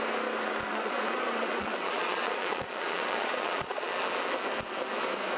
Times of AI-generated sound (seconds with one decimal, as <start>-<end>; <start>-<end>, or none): 0.7-3.9